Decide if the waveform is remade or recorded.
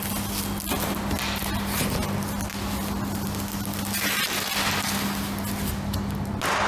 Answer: recorded